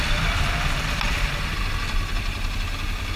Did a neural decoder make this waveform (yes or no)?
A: no